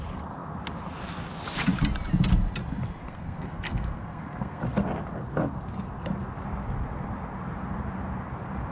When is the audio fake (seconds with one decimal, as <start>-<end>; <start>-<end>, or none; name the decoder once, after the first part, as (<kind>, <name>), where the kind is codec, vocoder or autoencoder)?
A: 3.0-4.6 (codec, SNAC)